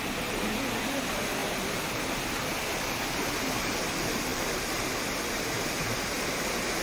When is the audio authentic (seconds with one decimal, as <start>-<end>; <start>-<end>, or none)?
0.0-4.3; 4.9-6.8

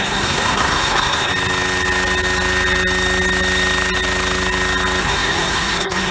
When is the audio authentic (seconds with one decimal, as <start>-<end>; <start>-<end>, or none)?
1.3-5.0

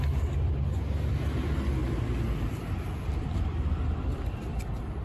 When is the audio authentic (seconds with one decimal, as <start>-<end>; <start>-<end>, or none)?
0.0-1.8

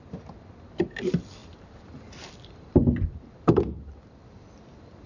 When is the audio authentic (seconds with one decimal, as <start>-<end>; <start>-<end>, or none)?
0.0-5.1

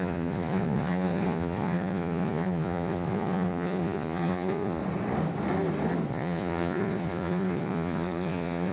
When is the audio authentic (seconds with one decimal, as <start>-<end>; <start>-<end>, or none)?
4.8-6.1

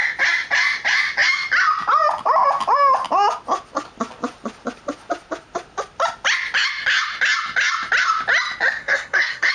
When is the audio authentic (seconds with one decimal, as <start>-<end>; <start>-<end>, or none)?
0.0-8.8

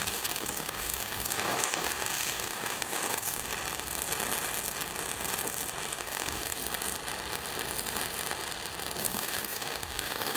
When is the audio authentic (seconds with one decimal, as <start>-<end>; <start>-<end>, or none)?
3.5-5.9; 6.6-9.0